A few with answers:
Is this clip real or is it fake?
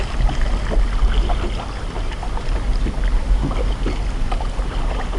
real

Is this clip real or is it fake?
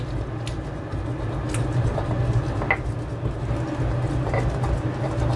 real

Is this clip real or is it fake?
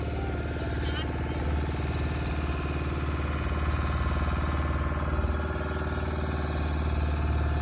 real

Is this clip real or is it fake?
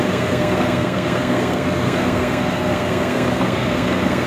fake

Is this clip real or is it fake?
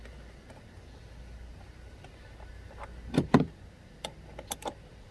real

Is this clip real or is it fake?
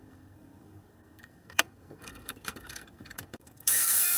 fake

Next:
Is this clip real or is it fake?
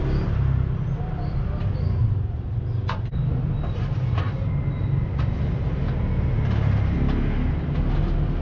real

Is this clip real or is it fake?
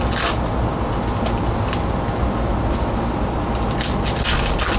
real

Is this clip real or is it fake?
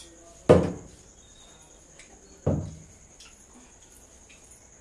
real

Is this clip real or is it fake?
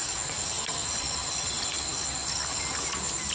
real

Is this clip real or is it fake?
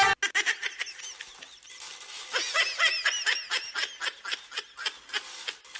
real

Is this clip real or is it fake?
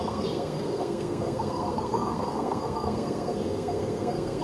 fake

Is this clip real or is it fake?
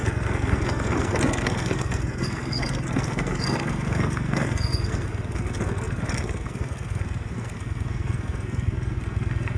fake